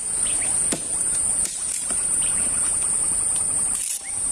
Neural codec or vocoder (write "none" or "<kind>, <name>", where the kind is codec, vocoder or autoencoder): vocoder, BigVGAN v2